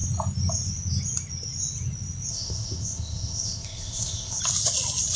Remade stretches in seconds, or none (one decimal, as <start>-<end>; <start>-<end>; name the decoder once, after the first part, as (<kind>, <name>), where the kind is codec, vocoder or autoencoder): 2.3-4.4 (codec, ZipCodec)